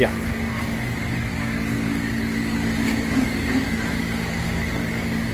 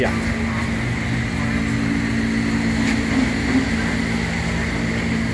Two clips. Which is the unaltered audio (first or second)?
second